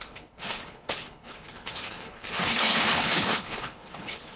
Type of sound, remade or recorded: remade